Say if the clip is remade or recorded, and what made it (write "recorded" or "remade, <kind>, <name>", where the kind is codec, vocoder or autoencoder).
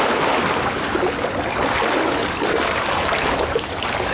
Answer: recorded